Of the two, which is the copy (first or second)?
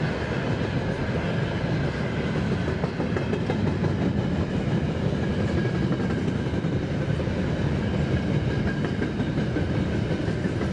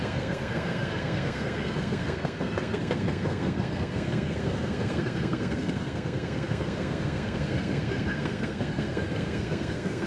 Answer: second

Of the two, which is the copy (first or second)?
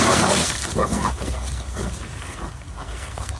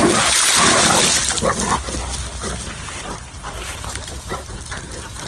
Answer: first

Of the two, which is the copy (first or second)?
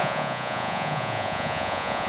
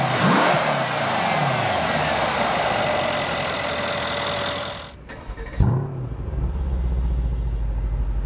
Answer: first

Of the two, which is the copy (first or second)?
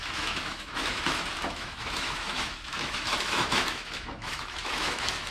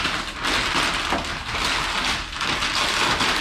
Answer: first